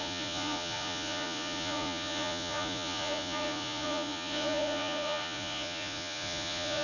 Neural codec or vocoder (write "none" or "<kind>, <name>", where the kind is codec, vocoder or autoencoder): vocoder, Vocos